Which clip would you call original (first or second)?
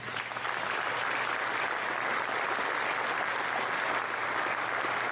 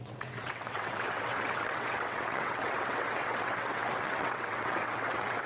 first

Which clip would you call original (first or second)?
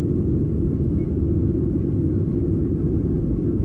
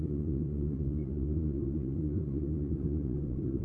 first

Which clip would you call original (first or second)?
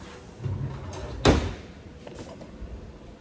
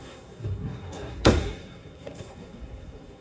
first